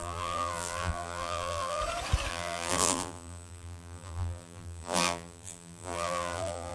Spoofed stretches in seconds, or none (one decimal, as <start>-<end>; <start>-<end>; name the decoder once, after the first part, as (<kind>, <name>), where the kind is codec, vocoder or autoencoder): 0.0-1.8 (vocoder, BigVGAN v2); 2.3-6.7